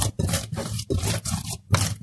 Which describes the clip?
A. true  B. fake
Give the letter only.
B